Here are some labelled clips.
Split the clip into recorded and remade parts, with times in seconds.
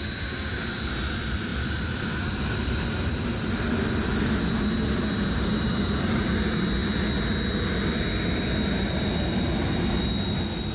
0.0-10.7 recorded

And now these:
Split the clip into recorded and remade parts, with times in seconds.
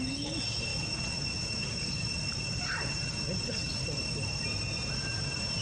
0.0-0.7 recorded; 0.7-1.9 remade; 1.9-5.6 recorded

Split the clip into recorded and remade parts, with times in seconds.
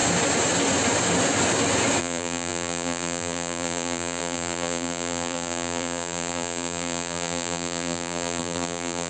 0.0-2.0 recorded; 2.0-9.1 remade